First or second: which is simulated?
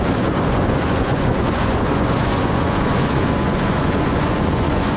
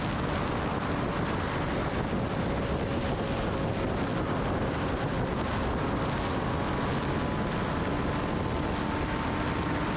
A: first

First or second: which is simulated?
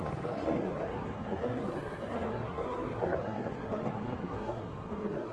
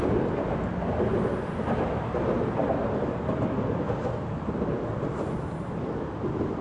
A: first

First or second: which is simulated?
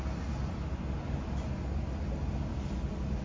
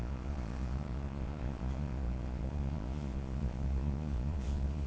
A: second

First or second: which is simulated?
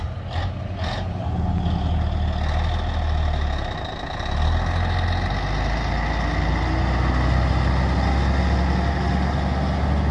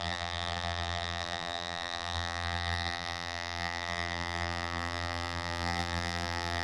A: second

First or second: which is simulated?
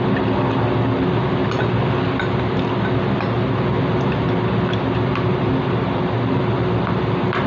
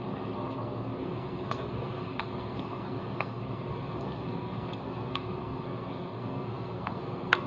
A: second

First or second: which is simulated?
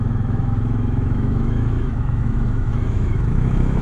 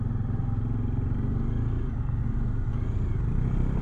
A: first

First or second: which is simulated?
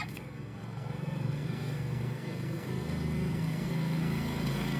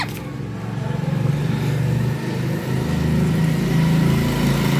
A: first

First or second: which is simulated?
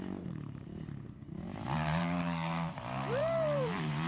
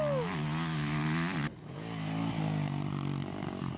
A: first